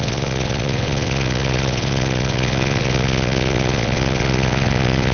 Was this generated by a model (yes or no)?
yes